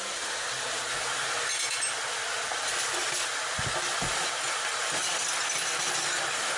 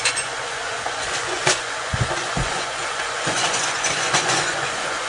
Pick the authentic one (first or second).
first